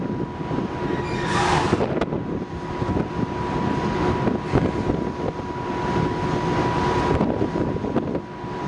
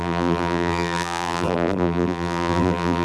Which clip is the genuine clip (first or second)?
first